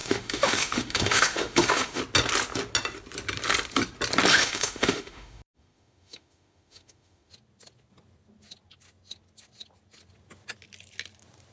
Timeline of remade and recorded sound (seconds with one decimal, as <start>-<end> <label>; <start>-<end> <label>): 0.0-2.0 remade; 2.0-4.3 recorded; 4.3-7.3 remade; 7.3-11.5 recorded